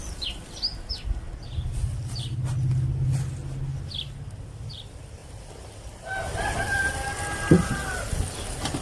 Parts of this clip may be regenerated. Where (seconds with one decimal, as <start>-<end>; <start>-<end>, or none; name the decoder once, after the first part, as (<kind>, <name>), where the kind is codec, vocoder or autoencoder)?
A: 5.2-6.9 (vocoder, BigVGAN v2)